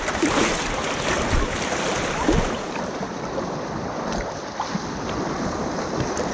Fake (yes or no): yes